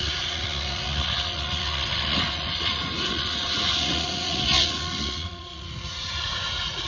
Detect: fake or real fake